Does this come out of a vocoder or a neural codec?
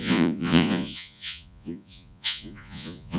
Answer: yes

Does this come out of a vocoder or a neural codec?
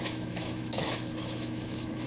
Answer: yes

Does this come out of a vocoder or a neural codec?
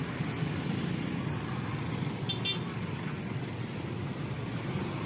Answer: no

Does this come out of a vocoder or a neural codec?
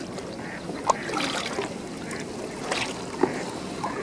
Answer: no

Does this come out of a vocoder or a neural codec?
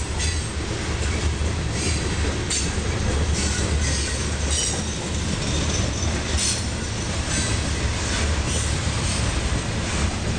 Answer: no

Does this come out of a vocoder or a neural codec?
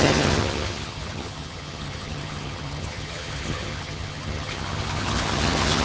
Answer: yes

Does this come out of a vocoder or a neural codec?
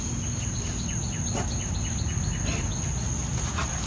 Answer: no